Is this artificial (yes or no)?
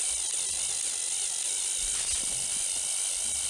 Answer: no